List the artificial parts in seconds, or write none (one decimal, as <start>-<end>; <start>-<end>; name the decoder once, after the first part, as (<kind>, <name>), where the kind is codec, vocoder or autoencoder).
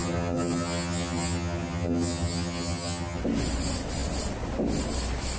0.0-3.2 (vocoder, HiFi-GAN)